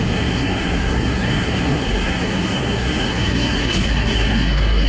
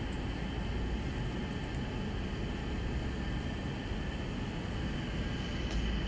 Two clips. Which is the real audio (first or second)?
second